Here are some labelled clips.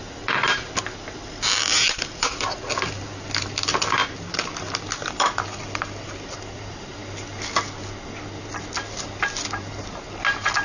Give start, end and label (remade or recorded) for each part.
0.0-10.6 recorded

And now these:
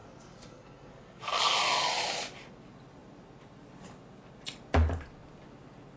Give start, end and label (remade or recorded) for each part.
0.0-1.4 remade; 1.4-6.0 recorded

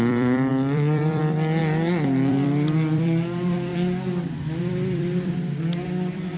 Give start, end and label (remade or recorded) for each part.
0.0-1.6 remade; 1.6-2.3 recorded; 2.3-3.7 remade; 3.7-4.6 recorded; 4.6-6.4 remade